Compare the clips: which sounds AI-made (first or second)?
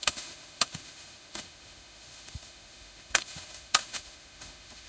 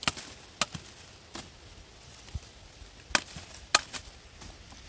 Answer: first